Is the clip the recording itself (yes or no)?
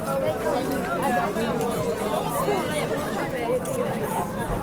yes